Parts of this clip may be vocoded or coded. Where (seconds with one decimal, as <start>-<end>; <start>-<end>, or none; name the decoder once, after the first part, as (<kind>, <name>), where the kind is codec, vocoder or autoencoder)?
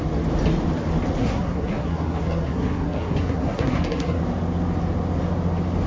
1.2-4.2 (codec, SNAC)